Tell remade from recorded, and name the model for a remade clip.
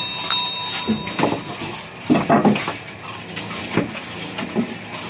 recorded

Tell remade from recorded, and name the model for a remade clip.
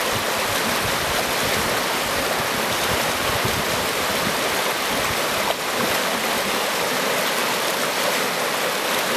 recorded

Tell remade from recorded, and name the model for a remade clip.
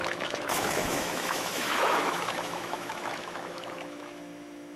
remade, autoencoder, DAC-VAE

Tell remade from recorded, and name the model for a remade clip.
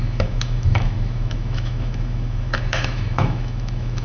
remade, autoencoder, DAC-VAE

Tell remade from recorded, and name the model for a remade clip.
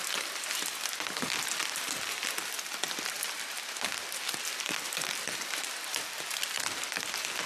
recorded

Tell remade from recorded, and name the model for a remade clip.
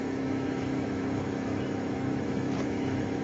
remade, autoencoder, DAC-VAE